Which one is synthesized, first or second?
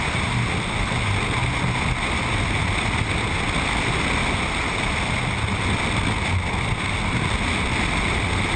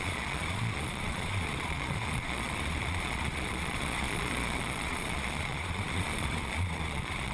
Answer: second